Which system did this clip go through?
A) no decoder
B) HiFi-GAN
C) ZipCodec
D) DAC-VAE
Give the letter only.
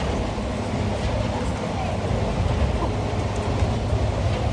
A